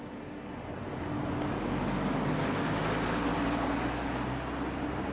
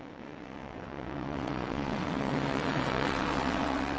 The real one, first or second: first